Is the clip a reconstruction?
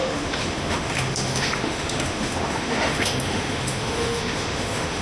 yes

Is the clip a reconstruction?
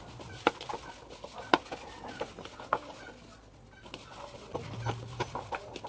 no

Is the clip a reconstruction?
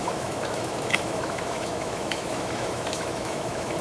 yes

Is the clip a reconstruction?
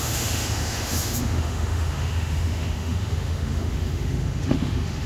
yes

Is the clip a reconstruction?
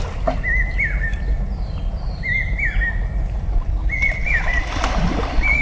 no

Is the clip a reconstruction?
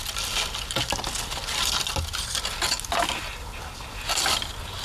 no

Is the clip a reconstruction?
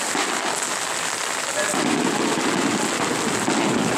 no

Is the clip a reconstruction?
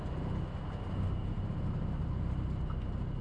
no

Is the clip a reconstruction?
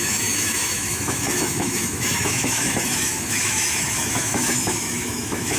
yes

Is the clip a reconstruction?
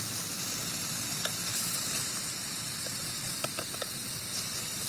no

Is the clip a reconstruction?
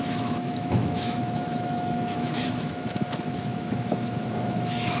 yes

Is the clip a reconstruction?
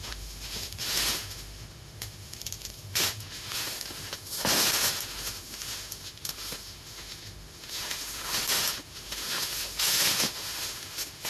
yes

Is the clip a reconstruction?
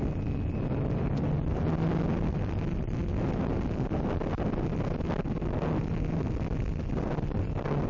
no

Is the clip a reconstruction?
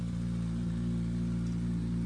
no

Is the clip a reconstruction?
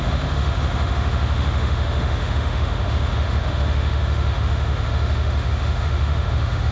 yes